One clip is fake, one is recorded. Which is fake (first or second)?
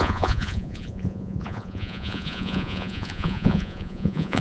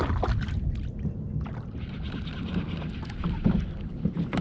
first